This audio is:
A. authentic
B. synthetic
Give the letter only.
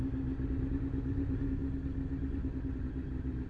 A